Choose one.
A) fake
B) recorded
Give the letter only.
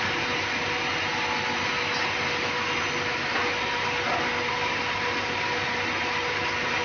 B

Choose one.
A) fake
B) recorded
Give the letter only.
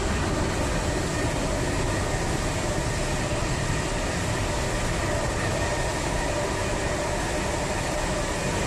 B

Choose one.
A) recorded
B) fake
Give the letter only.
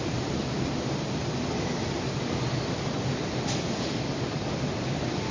A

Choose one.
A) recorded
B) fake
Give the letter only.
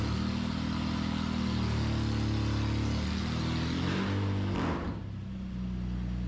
A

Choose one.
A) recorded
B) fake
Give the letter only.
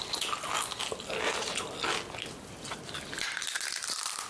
A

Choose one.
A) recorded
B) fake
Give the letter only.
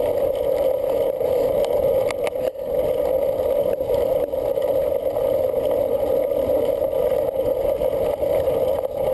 A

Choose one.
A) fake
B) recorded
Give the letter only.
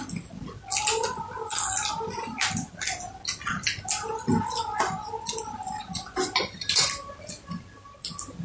B